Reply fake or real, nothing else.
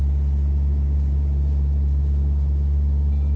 real